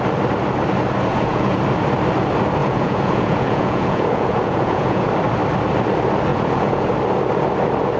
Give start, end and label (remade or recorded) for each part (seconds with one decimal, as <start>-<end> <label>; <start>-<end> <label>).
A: 0.0-1.1 recorded; 1.1-1.6 remade; 1.6-2.6 recorded; 2.6-5.1 remade; 5.1-6.3 recorded; 6.3-6.9 remade; 6.9-8.0 recorded